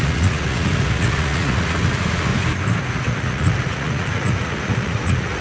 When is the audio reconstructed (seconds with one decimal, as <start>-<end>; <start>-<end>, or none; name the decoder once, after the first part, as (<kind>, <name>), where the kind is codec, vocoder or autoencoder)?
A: 0.0-2.3 (vocoder, Vocos); 2.9-5.4